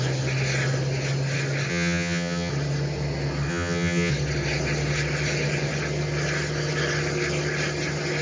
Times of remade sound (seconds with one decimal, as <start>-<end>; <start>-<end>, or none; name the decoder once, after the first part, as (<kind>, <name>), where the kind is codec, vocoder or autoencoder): 1.7-2.5 (vocoder, HiFi-GAN); 3.5-4.1